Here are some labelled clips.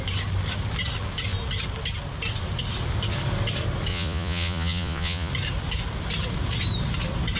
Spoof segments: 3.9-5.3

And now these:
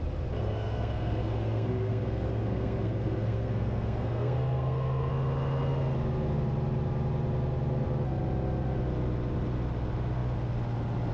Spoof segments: 0.4-5.1

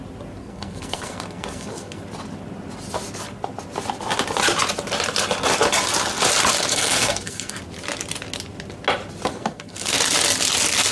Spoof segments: 0.4-2.0; 6.7-7.6; 9.3-9.9

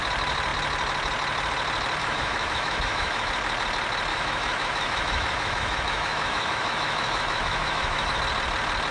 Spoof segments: 2.0-3.3; 4.1-8.2

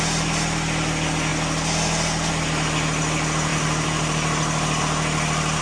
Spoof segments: 3.5-4.8

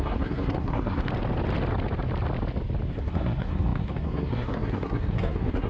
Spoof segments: 0.0-1.1; 2.9-5.7

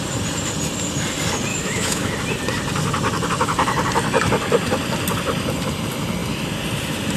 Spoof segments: 1.5-2.1